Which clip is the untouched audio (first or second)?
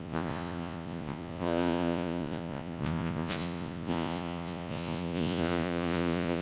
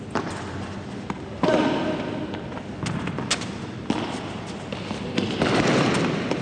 second